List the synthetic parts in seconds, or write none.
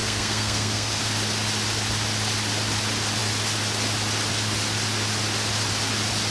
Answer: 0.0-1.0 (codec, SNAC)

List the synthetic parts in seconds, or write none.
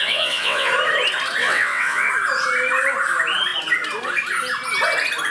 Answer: 0.0-0.7 (vocoder, WaveNeXt); 1.4-2.1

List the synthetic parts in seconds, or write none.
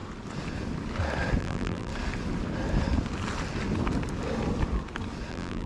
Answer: 1.4-1.9 (vocoder, BigVGAN v2); 5.3-5.7